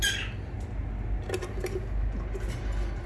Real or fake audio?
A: real